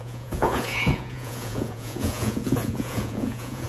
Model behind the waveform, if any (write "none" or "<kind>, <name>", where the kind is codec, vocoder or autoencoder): vocoder, Vocos